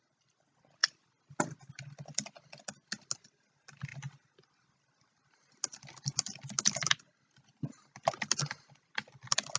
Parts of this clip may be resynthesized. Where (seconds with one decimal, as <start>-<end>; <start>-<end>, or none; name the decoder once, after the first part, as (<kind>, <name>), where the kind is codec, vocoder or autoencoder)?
none